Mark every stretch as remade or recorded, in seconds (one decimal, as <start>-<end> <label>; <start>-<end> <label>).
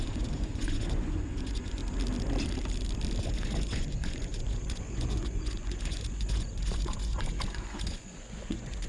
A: 0.0-1.8 remade; 1.8-3.2 recorded; 3.2-8.9 remade